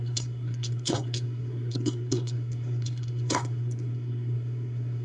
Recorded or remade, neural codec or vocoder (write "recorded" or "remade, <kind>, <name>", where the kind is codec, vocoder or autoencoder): remade, codec, SNAC